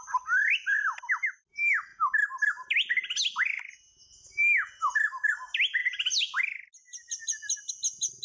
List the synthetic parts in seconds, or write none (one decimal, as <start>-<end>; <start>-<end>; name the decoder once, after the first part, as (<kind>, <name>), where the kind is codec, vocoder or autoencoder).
none